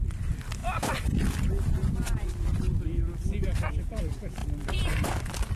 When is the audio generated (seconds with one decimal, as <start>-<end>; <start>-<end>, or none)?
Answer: 0.0-0.6; 4.0-4.4